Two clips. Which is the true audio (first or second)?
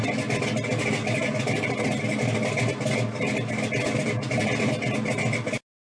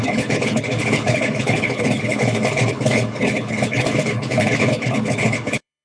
first